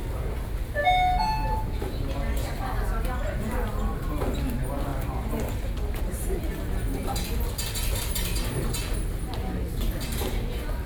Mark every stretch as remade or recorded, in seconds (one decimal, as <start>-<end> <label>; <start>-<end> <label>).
0.0-10.9 recorded